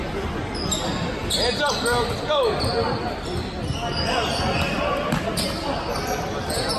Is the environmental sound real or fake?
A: real